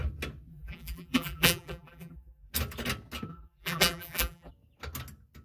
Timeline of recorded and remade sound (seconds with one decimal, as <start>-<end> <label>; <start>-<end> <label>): 0.0-0.5 recorded; 0.5-2.5 remade; 2.5-3.3 recorded; 3.3-4.5 remade; 4.5-5.4 recorded